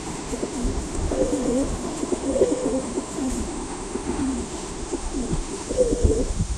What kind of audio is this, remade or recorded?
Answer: remade